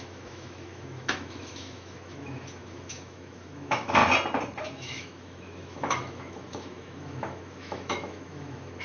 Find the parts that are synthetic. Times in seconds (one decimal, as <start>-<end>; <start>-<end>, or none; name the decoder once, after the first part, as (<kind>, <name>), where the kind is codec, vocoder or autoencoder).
0.0-4.0 (autoencoder, DAC-VAE); 4.6-8.8